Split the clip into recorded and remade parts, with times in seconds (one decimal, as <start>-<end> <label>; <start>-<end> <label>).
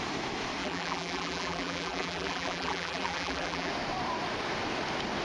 0.0-0.6 recorded; 0.6-3.7 remade; 3.7-5.2 recorded